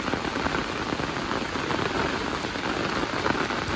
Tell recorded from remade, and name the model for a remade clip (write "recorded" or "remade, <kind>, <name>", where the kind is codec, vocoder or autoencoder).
recorded